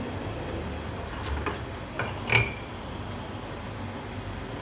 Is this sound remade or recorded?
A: recorded